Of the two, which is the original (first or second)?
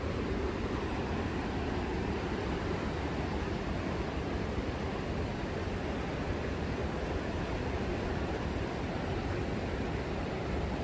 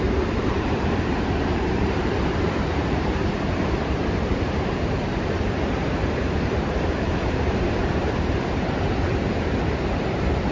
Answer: first